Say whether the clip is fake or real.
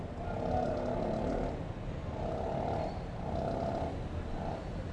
real